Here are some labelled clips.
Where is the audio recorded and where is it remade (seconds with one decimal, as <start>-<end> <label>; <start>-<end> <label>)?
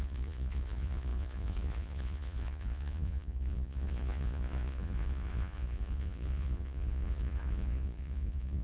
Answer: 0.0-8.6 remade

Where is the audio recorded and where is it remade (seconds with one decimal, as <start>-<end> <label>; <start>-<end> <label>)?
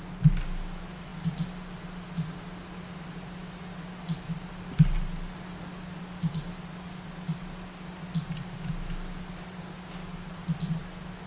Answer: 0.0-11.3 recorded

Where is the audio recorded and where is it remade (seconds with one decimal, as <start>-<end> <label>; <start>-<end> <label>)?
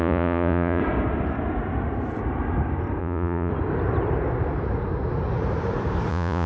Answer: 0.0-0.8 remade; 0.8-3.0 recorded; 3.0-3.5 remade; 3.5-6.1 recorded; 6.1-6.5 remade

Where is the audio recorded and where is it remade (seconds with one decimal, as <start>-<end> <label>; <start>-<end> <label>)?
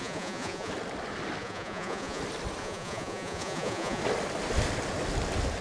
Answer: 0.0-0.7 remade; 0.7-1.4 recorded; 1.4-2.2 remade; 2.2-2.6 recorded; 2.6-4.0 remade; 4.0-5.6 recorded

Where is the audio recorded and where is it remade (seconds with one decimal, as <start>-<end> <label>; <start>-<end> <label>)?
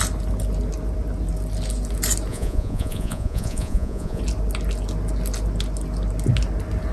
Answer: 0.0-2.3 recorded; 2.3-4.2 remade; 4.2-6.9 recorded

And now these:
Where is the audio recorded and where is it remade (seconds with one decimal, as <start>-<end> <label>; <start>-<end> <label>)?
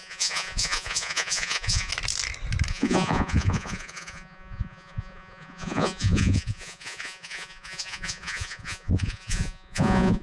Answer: 0.0-1.9 remade; 1.9-2.7 recorded; 2.7-10.2 remade